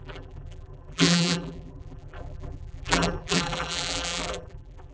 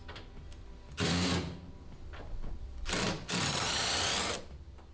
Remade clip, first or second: first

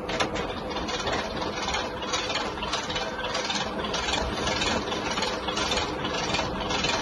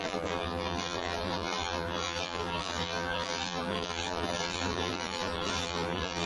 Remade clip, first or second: second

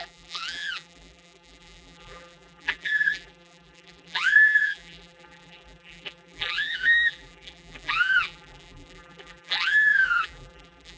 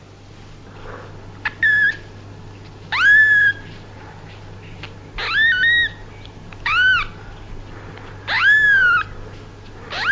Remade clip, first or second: first